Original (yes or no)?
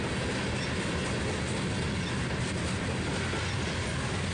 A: yes